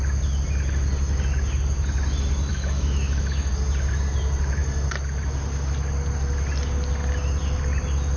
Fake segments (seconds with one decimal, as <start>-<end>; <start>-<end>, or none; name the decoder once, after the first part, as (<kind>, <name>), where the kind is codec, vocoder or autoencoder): 2.5-3.5 (autoencoder, DAC-VAE)